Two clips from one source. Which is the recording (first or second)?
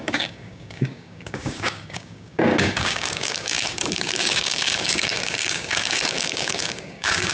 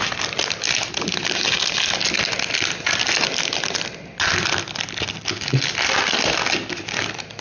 second